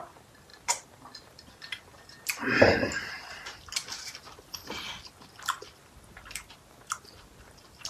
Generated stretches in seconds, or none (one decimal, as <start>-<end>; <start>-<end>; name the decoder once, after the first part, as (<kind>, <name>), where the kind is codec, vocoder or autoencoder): none